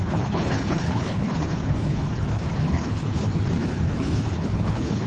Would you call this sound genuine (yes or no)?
no